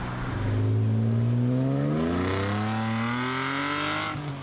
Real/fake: real